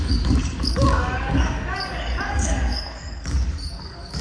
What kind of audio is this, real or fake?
fake